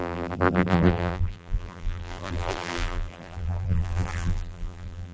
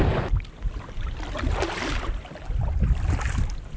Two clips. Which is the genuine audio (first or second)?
second